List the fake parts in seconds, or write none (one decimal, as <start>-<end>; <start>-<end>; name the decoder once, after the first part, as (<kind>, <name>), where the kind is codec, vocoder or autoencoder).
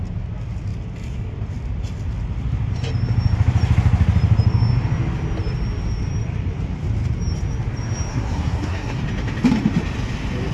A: 8.1-9.0 (codec, SNAC)